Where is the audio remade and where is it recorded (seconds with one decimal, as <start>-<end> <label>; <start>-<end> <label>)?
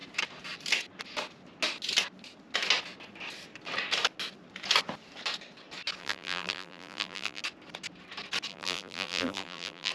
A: 0.0-6.0 recorded; 6.0-7.4 remade; 7.4-8.5 recorded; 8.5-9.9 remade